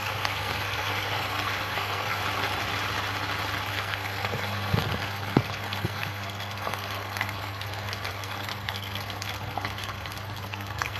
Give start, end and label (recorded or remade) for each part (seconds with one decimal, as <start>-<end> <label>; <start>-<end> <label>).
0.0-2.2 remade; 2.2-3.7 recorded; 3.7-11.0 remade